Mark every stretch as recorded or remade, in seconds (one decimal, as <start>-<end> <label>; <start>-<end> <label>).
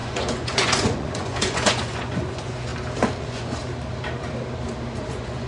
0.0-2.7 remade; 2.7-3.2 recorded; 3.2-3.6 remade; 3.6-5.1 recorded; 5.1-5.5 remade